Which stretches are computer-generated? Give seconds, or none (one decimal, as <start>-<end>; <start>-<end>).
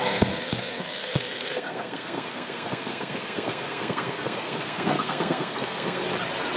0.0-6.0